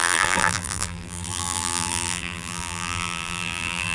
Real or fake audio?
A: fake